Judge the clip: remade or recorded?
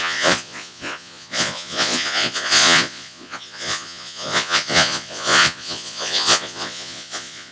remade